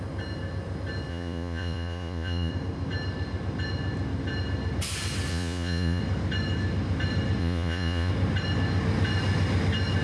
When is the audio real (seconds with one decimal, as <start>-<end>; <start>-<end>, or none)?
0.0-1.1; 2.5-5.3; 6.0-7.4; 8.1-10.0

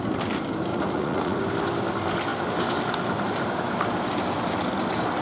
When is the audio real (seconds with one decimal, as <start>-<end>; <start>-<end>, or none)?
0.0-0.7; 1.4-5.2

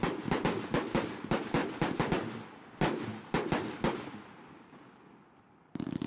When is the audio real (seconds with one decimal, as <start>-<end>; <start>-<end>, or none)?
0.0-6.1